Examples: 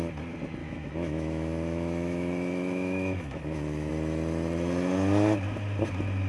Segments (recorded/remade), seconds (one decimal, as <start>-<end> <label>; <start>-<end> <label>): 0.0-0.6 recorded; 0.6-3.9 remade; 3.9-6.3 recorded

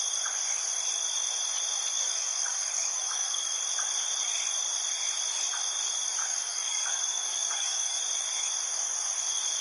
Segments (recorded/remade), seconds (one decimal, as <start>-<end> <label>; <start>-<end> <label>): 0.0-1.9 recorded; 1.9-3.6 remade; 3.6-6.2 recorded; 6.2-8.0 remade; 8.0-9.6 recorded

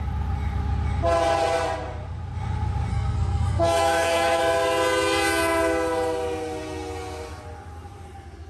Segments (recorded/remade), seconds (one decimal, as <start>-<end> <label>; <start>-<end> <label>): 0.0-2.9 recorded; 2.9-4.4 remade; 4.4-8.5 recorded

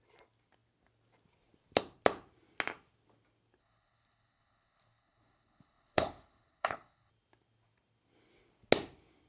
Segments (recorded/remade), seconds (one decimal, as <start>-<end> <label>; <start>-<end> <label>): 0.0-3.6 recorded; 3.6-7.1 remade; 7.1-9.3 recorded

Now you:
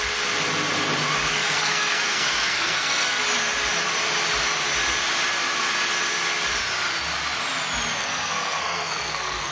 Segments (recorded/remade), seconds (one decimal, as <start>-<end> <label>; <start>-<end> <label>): 0.0-1.3 recorded; 1.3-3.2 remade; 3.2-8.0 recorded; 8.0-9.5 remade

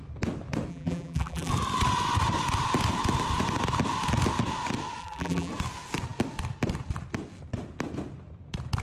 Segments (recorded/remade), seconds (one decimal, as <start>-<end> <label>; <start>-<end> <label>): 0.0-0.7 recorded; 0.7-1.5 remade; 1.5-5.0 recorded; 5.0-5.5 remade; 5.5-8.8 recorded